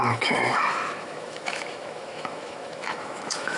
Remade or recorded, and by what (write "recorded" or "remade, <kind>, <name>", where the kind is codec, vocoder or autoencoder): remade, autoencoder, DAC-VAE